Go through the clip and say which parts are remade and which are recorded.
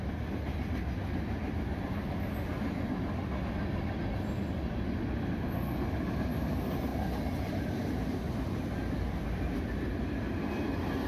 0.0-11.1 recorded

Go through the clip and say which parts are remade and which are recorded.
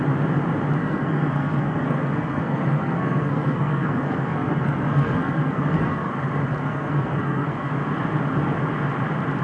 0.0-0.8 recorded; 0.8-6.1 remade; 6.1-6.6 recorded; 6.6-7.7 remade; 7.7-9.4 recorded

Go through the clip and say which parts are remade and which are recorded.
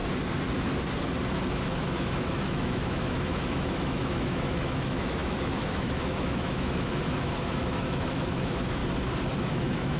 0.0-1.5 recorded; 1.5-8.8 remade; 8.8-9.4 recorded; 9.4-10.0 remade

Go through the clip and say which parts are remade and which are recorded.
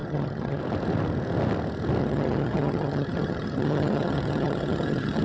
0.0-0.6 remade; 0.6-2.0 recorded; 2.0-5.2 remade